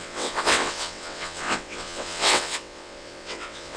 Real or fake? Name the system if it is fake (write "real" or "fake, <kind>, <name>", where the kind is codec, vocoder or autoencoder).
fake, vocoder, WaveNeXt